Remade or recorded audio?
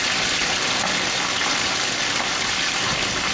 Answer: recorded